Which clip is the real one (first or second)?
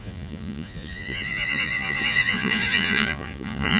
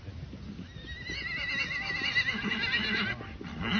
second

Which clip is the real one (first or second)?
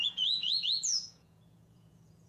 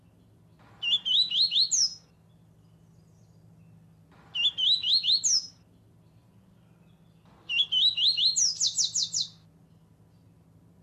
second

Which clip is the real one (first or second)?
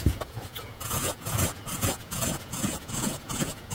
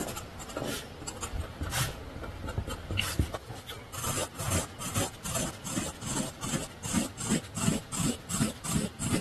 second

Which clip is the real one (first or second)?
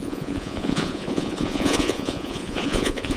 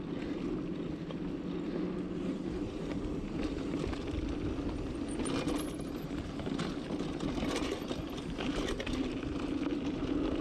second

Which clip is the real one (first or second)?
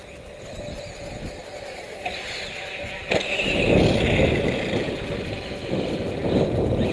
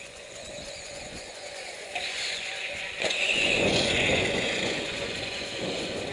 first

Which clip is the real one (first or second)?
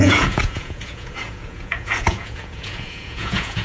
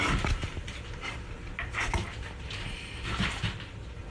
second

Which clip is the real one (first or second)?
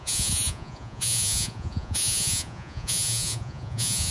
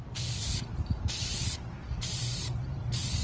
second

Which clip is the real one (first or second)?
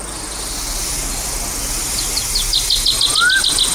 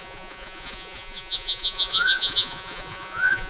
first